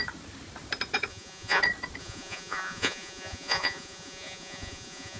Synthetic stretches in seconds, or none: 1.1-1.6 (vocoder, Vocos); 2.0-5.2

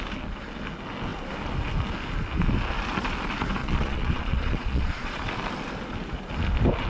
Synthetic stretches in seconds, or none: 3.6-5.2 (vocoder, Vocos)

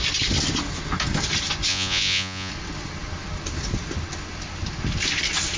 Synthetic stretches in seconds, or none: 1.7-2.5 (vocoder, Vocos)

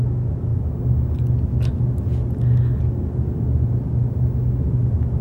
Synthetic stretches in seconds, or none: none

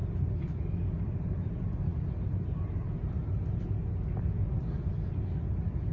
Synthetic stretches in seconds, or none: none

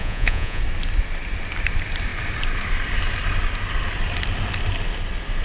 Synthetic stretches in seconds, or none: 0.0-0.6 (vocoder, Vocos)